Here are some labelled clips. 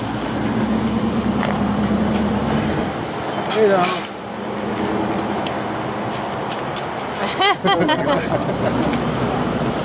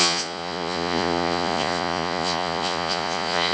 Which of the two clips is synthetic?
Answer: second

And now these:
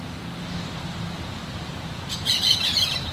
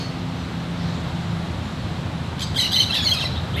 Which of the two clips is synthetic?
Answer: first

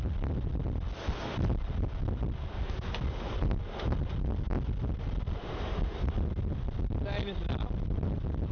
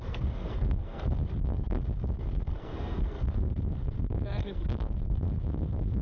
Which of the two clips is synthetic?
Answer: second